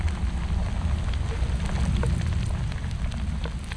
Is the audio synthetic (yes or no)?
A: no